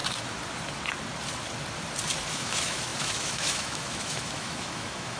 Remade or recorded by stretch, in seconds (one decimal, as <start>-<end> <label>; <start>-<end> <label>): 0.0-2.3 recorded; 2.3-5.2 remade